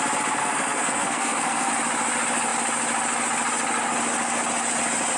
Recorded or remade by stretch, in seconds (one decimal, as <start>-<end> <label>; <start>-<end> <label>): 0.0-0.4 recorded; 0.4-1.7 remade; 1.7-5.2 recorded